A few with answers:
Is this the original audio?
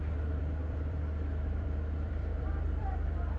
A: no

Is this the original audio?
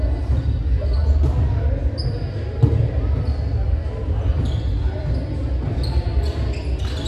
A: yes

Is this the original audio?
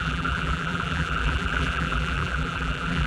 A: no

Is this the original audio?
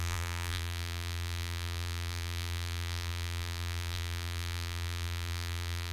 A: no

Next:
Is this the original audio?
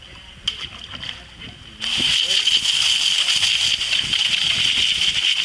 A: yes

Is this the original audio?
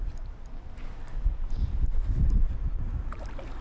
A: no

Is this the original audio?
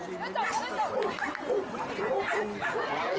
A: yes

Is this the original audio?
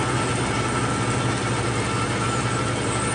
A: yes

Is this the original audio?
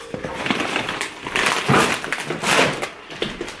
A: yes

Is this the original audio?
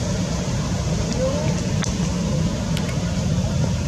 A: yes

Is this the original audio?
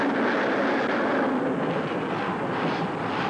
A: yes